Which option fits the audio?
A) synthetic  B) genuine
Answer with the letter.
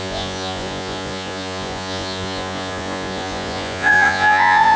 A